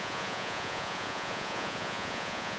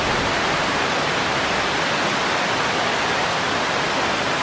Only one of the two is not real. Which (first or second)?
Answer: first